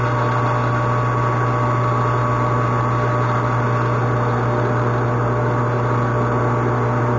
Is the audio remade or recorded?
recorded